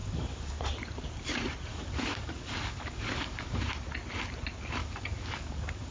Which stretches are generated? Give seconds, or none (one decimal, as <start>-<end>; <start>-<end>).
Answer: 0.0-0.6; 1.7-3.6; 4.8-5.9